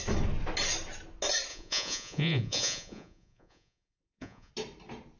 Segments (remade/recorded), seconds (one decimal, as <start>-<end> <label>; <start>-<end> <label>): 0.0-1.5 recorded; 1.5-4.5 remade; 4.5-5.2 recorded